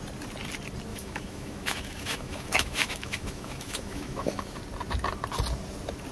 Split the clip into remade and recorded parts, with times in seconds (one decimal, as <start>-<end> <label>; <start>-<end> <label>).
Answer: 0.0-0.9 recorded; 0.9-4.6 remade; 4.6-6.1 recorded